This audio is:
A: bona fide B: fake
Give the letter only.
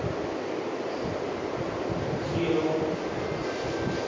A